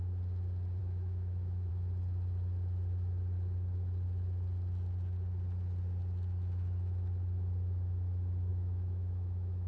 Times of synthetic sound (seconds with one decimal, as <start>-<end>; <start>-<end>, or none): 0.8-1.7; 8.5-9.7